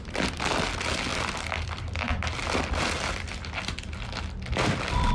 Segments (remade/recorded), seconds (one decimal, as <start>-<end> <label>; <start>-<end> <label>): 0.0-1.1 recorded; 1.1-4.2 remade; 4.2-5.1 recorded